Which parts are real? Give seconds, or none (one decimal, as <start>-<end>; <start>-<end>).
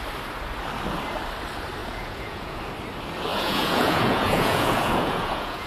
0.0-1.8; 2.6-3.3